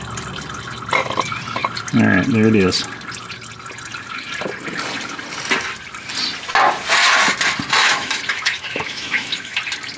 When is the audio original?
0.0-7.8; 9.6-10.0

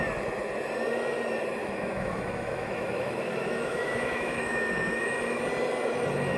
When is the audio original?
0.0-1.6; 5.4-6.4

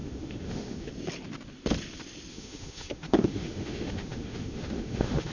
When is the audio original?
0.9-2.3